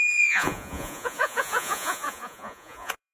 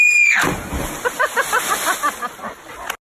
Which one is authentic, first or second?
second